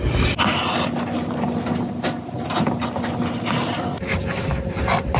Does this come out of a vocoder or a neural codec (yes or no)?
no